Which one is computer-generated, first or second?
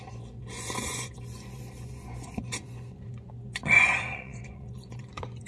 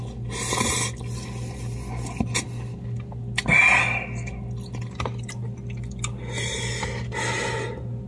first